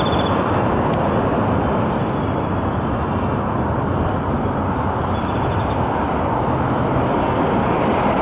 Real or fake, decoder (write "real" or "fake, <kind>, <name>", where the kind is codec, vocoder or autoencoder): real